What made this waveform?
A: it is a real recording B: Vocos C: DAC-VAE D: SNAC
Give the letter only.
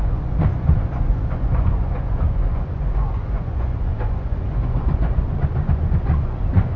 B